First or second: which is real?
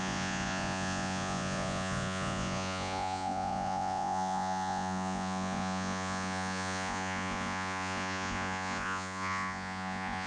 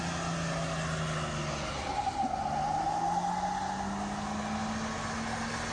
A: second